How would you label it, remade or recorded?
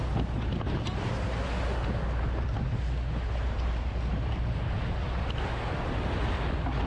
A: recorded